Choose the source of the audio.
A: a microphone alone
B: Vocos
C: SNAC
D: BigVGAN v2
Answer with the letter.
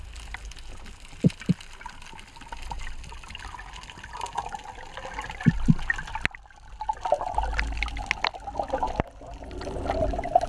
A